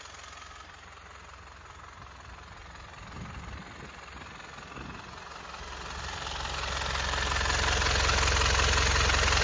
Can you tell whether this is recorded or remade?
recorded